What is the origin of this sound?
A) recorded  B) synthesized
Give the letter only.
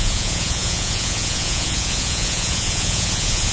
B